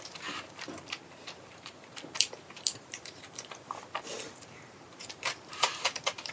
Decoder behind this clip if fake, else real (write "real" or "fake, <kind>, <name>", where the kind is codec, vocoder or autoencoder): fake, vocoder, BigVGAN v2